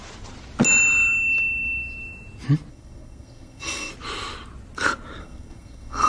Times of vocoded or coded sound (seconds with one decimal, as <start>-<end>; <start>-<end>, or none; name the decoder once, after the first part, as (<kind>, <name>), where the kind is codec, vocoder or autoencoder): 2.7-3.9 (codec, SNAC); 5.2-6.1